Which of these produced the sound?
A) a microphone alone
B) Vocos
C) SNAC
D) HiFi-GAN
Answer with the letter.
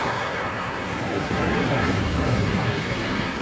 C